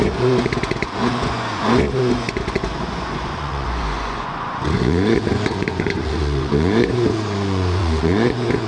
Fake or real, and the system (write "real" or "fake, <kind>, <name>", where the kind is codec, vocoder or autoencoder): fake, vocoder, Vocos